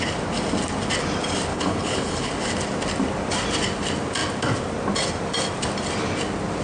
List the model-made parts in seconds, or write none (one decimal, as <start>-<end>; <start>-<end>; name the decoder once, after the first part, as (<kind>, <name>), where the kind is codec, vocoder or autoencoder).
1.5-2.3 (codec, HILCodec)